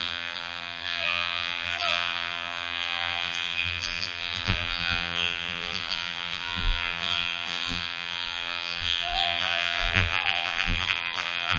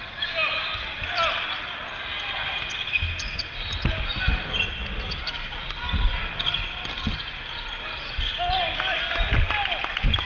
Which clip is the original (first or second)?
second